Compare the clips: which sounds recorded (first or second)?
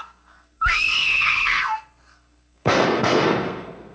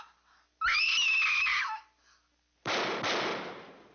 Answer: second